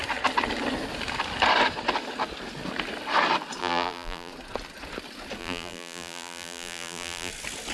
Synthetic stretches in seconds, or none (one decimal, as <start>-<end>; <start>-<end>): 3.6-4.3; 5.4-7.3